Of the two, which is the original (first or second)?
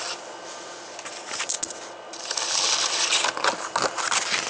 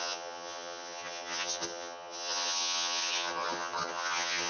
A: first